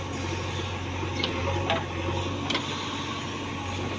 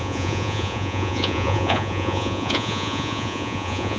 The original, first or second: first